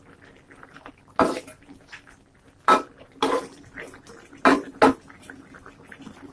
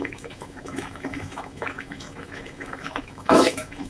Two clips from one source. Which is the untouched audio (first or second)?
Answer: first